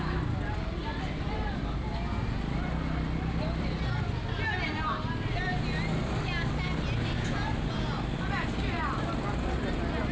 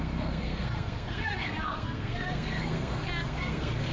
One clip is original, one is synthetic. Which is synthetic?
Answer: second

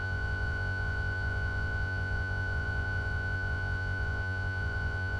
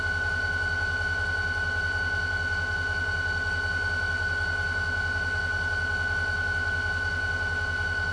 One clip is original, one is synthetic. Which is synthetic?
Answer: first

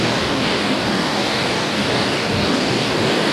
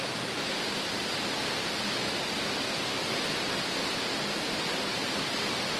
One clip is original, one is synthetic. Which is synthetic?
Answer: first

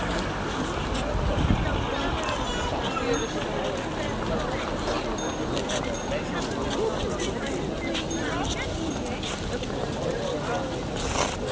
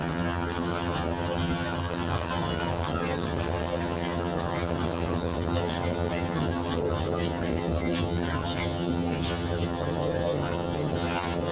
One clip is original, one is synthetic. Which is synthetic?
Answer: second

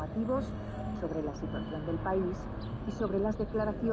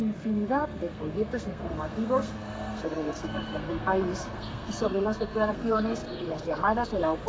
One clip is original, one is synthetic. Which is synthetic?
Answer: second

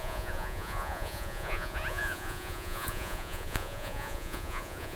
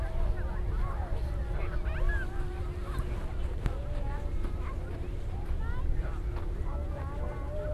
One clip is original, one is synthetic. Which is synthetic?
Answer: first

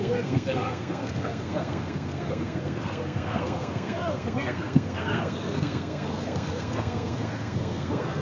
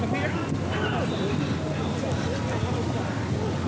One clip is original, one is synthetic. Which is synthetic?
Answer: first